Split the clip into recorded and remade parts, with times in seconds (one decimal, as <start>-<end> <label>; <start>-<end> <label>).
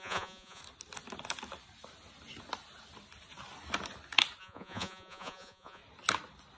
0.0-0.6 remade; 0.6-4.4 recorded; 4.4-5.8 remade; 5.8-6.6 recorded